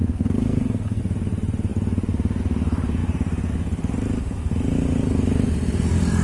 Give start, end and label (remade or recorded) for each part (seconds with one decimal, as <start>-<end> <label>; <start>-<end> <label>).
0.0-1.0 remade; 1.0-6.2 recorded

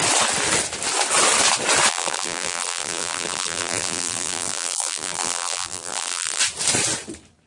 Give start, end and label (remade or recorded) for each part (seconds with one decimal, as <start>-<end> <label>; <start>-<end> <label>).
0.0-1.9 recorded; 1.9-6.4 remade; 6.4-7.5 recorded

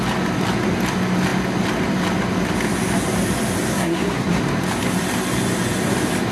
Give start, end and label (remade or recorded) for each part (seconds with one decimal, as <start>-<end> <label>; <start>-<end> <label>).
0.0-3.7 recorded; 3.7-4.4 remade; 4.4-6.3 recorded

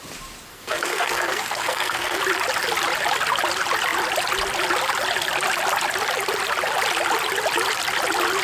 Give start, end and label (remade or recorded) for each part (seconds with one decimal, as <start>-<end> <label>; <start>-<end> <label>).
0.0-0.5 recorded; 0.5-2.2 remade; 2.2-8.4 recorded

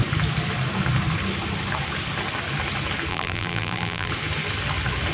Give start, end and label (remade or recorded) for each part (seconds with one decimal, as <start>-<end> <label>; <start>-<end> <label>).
0.0-3.1 recorded; 3.1-4.1 remade; 4.1-5.1 recorded

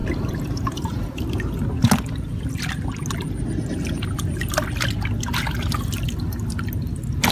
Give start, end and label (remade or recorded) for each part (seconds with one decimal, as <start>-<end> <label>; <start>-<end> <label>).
0.0-1.3 remade; 1.3-7.3 recorded

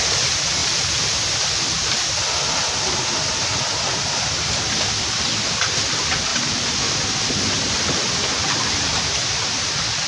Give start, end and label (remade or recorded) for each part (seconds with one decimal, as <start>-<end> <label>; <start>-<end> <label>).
0.0-6.3 recorded; 6.3-9.6 remade; 9.6-10.1 recorded

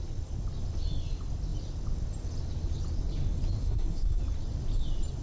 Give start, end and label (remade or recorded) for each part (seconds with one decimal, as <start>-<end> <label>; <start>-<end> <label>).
0.0-3.6 recorded; 3.6-4.2 remade; 4.2-5.2 recorded